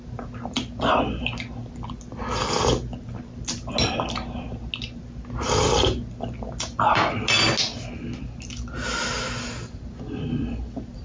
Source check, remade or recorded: recorded